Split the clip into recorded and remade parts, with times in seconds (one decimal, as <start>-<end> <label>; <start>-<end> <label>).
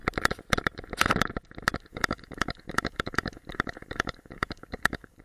0.0-1.9 recorded; 1.9-5.2 remade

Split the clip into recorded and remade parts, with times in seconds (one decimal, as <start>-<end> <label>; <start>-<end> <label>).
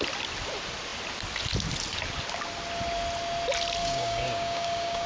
0.0-3.8 recorded; 3.8-5.1 remade